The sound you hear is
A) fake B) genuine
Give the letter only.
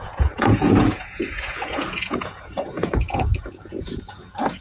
A